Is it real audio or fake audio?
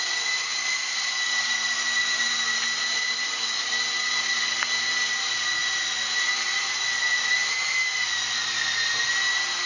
real